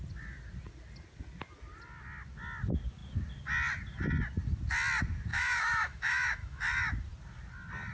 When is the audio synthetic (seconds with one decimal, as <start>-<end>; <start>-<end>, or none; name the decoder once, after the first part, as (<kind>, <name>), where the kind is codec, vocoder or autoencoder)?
5.3-6.6 (autoencoder, DAC-VAE)